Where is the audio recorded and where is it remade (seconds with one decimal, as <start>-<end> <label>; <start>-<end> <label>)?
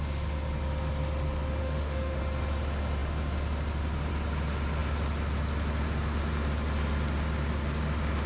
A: 0.0-1.6 recorded; 1.6-2.2 remade; 2.2-8.3 recorded